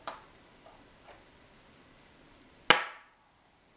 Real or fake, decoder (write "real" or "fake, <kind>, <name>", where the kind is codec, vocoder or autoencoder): real